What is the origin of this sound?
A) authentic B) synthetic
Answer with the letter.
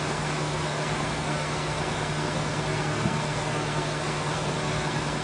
B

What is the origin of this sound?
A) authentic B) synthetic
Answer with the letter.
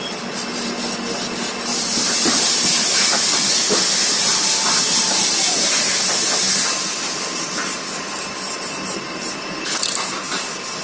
A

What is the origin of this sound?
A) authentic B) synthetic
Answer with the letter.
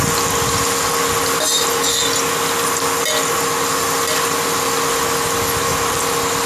A